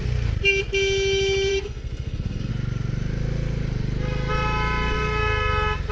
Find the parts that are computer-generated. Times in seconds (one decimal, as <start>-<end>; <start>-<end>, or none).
1.5-2.5